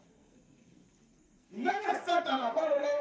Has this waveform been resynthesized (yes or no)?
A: yes